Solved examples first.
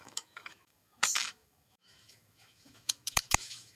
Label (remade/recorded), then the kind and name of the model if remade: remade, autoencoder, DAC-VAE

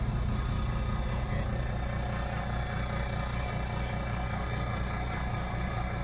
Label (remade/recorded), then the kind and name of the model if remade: recorded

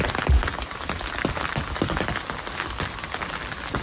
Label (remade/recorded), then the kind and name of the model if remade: recorded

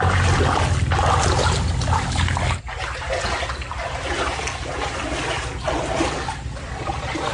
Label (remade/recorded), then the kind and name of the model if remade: recorded